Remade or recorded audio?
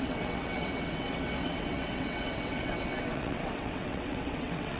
remade